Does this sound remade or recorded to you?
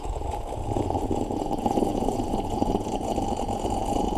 remade